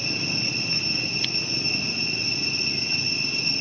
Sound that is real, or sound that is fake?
real